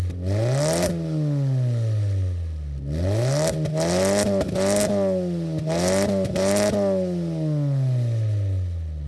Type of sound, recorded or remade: recorded